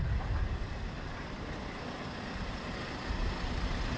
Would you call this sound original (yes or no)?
yes